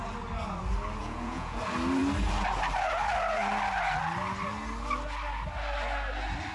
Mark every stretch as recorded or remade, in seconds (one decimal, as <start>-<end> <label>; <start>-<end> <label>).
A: 0.0-1.0 recorded; 1.0-1.6 remade; 1.6-6.5 recorded